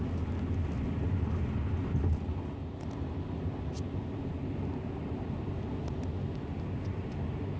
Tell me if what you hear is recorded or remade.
recorded